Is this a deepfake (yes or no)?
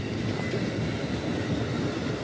no